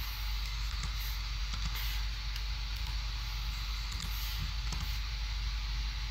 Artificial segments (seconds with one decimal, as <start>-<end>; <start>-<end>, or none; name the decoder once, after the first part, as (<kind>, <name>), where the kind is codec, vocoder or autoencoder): none